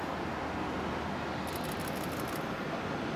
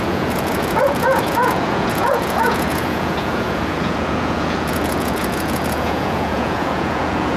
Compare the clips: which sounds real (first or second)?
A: first